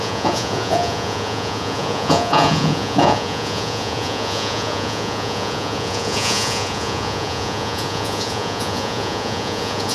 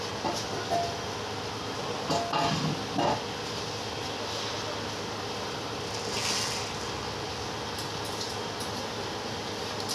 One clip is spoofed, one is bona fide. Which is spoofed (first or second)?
first